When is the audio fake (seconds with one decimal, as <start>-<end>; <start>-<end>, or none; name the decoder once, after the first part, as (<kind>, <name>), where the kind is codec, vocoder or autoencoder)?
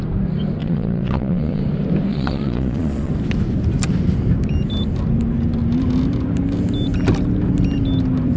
0.6-1.6 (vocoder, Vocos); 2.1-3.1